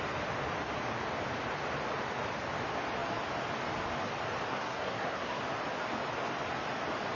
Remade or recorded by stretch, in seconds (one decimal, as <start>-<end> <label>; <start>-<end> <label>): 0.0-4.5 recorded; 4.5-5.4 remade; 5.4-7.1 recorded